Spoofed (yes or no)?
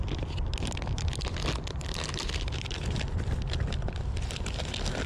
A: no